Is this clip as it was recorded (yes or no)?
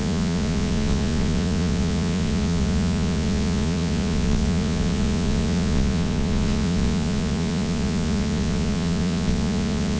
no